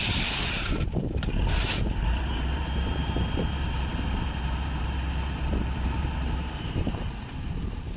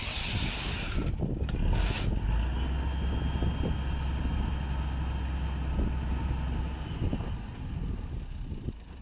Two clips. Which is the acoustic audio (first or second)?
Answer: second